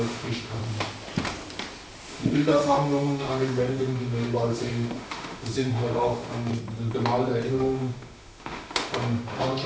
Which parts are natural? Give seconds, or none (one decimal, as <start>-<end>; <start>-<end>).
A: 0.6-2.1; 6.5-7.5